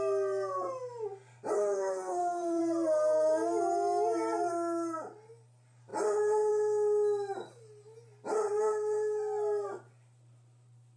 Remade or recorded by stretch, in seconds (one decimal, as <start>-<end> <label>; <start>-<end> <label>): 0.0-1.6 recorded; 1.6-2.6 remade; 2.6-11.0 recorded